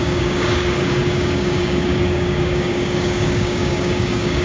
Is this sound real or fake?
fake